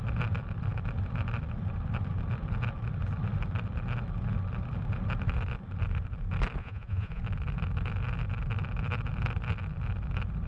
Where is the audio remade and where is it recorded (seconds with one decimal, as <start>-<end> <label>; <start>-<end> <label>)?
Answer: 0.0-6.6 recorded; 6.6-7.2 remade; 7.2-10.5 recorded